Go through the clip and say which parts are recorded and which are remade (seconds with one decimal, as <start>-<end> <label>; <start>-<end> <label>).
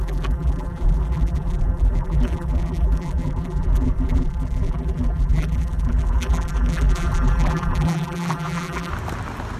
0.0-8.9 remade; 8.9-9.6 recorded